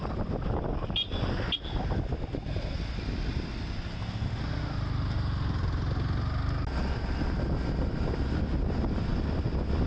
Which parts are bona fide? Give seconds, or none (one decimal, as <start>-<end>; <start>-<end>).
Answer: 0.0-9.1